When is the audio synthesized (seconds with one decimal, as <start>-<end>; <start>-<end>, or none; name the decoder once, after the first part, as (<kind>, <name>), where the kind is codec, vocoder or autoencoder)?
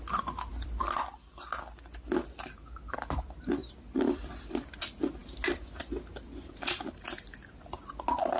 0.5-1.0 (vocoder, BigVGAN v2); 3.6-4.8; 5.2-5.8